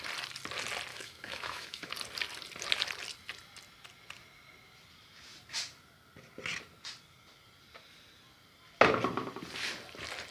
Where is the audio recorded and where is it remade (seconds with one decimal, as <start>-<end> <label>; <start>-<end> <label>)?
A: 0.0-0.9 recorded; 0.9-1.9 remade; 1.9-10.3 recorded